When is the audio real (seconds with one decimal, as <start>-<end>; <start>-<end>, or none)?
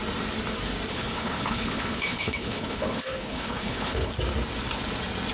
0.0-0.9; 4.1-5.3